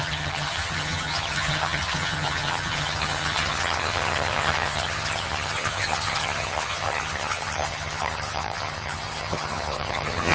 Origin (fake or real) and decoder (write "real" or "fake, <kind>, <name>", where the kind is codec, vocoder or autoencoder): fake, vocoder, HiFi-GAN